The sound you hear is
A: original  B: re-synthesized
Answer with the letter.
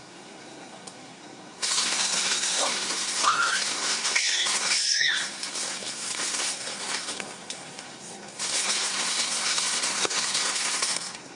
B